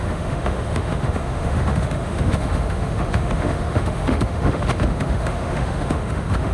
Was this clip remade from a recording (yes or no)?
yes